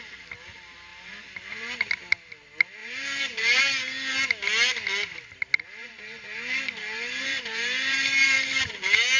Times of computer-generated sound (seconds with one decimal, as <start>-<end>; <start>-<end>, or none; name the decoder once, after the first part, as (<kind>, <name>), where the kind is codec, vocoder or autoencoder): 0.9-1.5 (vocoder, BigVGAN v2); 2.8-3.6; 5.8-8.7